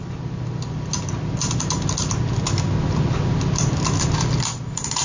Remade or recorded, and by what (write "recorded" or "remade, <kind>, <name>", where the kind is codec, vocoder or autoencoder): recorded